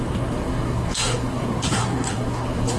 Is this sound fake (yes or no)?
yes